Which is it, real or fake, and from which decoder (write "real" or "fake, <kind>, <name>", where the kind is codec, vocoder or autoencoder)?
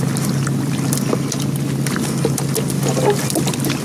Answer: real